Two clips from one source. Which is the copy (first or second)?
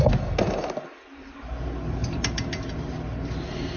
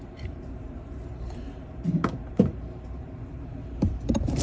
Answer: second